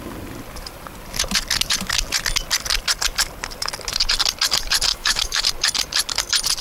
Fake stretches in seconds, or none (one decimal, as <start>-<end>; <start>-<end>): 4.9-5.4